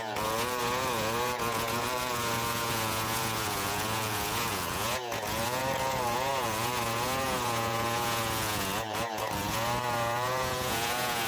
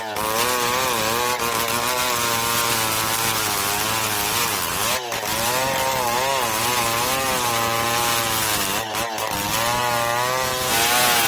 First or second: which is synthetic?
first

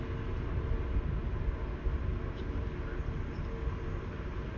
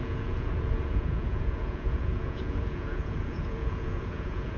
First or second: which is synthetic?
second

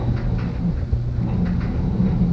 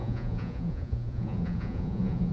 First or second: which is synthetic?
second